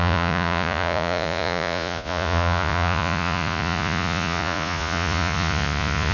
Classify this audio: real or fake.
fake